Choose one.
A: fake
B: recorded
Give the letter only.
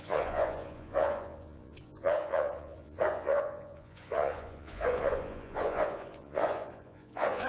A